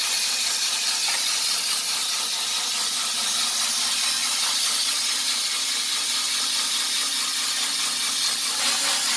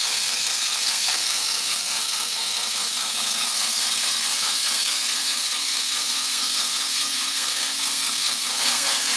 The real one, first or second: first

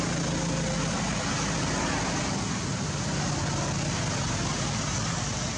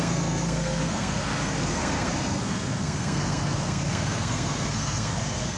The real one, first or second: first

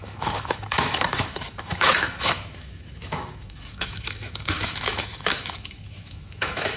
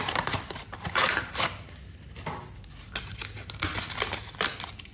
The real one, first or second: second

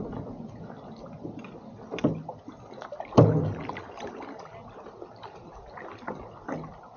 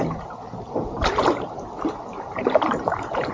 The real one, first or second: first